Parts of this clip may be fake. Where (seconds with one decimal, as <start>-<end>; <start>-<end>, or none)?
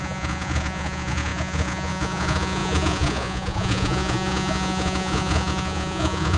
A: 0.0-6.4